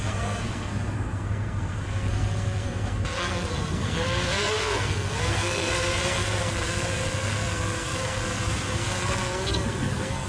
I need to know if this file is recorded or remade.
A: remade